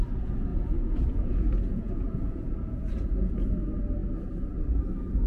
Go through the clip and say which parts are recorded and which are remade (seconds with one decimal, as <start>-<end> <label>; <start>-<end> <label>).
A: 0.0-0.5 recorded; 0.5-3.3 remade; 3.3-5.3 recorded